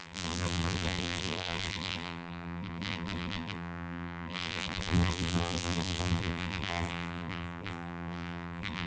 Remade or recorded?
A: remade